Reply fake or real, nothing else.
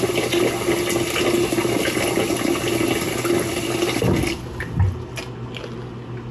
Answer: real